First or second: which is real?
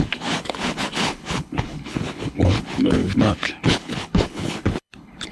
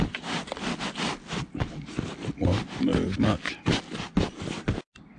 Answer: second